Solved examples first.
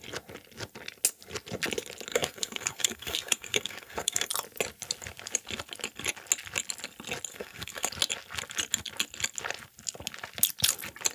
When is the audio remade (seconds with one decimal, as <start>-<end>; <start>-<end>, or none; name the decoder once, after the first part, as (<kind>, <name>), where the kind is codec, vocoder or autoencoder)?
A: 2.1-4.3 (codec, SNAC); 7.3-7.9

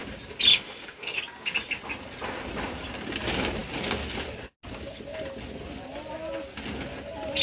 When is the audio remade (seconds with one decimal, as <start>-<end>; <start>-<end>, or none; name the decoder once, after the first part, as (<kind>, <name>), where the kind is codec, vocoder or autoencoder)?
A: 0.5-1.2 (autoencoder, DAC-VAE)

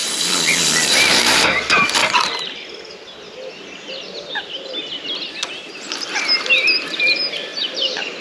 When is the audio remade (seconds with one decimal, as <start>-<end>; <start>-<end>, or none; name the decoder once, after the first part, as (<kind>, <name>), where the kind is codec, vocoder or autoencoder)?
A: 0.9-2.0 (vocoder, BigVGAN v2); 6.1-8.2

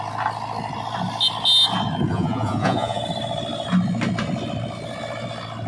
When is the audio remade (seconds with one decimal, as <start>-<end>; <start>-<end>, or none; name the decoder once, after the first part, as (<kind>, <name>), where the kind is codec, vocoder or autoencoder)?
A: 2.1-3.0 (vocoder, Vocos)